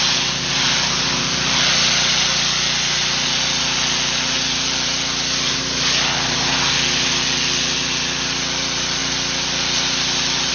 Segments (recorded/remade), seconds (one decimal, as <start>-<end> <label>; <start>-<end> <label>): 0.0-10.5 recorded